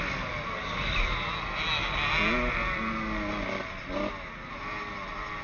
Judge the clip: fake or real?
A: real